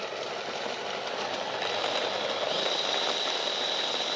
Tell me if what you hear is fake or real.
fake